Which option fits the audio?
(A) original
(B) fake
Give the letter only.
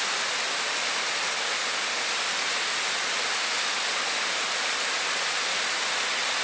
A